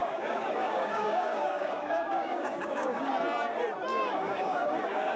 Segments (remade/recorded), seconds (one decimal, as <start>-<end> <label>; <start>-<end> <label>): 0.0-3.1 remade; 3.1-3.9 recorded; 3.9-5.2 remade